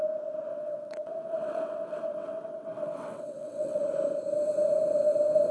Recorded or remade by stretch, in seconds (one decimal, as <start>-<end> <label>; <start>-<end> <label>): 0.0-0.5 recorded; 0.5-3.8 remade; 3.8-5.5 recorded